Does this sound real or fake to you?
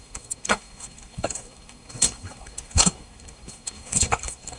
fake